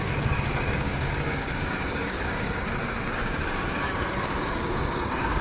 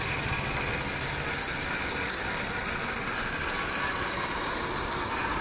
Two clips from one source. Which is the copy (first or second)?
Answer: first